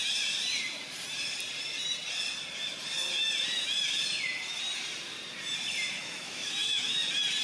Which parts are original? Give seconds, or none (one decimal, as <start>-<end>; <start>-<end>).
0.0-6.0; 7.0-7.4